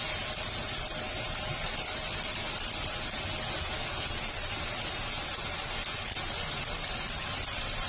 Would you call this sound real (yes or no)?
yes